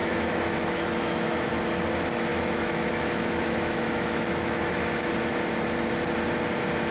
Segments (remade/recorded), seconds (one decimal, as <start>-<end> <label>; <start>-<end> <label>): 0.0-1.5 remade; 1.5-2.3 recorded; 2.3-5.1 remade; 5.1-6.9 recorded